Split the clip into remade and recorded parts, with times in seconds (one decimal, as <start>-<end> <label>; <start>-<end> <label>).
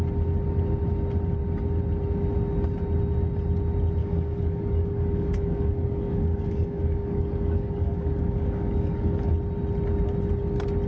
0.0-4.0 recorded; 4.0-9.3 remade; 9.3-10.9 recorded